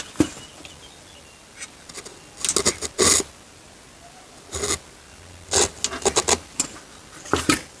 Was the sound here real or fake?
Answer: real